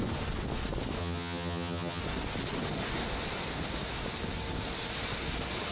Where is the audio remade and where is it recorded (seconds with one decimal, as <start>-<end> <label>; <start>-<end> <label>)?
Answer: 0.0-1.0 recorded; 1.0-2.0 remade; 2.0-5.7 recorded